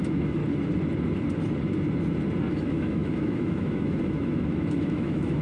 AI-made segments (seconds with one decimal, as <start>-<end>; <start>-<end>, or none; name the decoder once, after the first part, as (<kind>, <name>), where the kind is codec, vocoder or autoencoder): 0.0-0.4 (autoencoder, DAC-VAE); 2.5-5.4